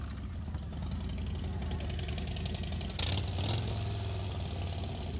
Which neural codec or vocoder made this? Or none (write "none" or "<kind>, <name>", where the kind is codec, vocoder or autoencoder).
none